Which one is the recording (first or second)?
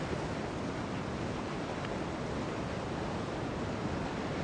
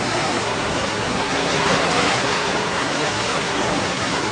first